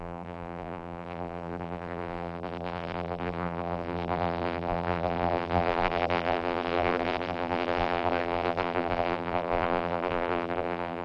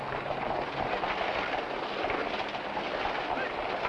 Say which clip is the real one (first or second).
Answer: second